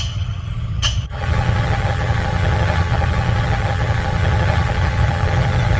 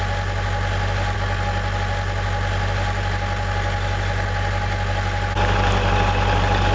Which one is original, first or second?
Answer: second